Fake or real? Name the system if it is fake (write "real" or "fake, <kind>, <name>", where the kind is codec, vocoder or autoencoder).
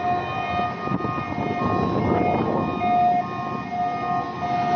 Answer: real